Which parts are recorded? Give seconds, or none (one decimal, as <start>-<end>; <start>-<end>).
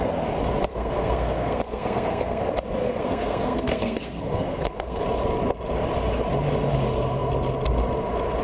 0.0-0.7; 2.4-2.8; 5.0-8.4